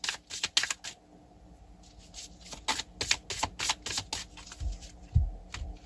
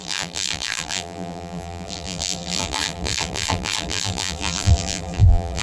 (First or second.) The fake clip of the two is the second